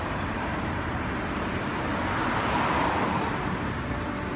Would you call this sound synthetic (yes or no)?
yes